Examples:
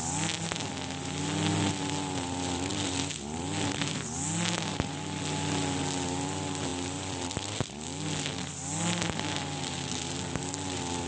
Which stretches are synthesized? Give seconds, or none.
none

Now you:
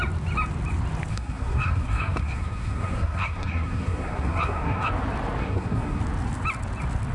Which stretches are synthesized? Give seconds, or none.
1.1-4.9 (codec, SNAC); 5.4-6.0